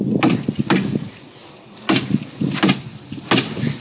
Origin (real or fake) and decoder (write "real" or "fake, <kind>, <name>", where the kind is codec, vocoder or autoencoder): real